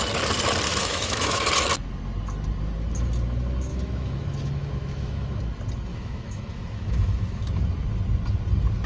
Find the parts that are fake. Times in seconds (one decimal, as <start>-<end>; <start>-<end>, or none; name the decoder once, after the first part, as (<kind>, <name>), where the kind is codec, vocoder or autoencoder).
0.7-1.5 (autoencoder, DAC-VAE); 3.7-5.4; 5.9-7.4